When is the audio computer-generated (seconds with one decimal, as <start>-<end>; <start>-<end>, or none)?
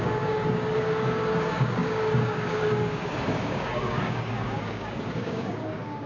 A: 0.0-6.1